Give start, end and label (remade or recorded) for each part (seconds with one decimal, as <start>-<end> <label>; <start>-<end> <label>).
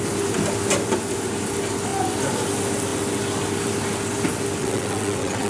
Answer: 0.0-4.6 recorded; 4.6-5.5 remade